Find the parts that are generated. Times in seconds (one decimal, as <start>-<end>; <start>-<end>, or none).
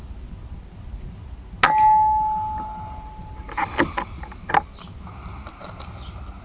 none